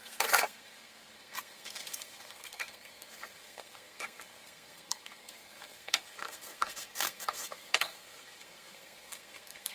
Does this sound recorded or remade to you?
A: remade